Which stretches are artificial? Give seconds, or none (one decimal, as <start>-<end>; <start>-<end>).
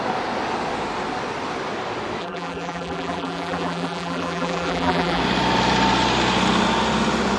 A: 2.2-5.2